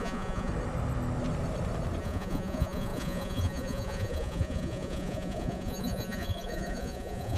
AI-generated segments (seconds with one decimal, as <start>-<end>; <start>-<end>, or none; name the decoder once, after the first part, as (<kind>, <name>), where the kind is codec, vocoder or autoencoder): 0.0-0.5 (vocoder, Vocos); 2.0-7.4